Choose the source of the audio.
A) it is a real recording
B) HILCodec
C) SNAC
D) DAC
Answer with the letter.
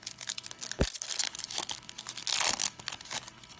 A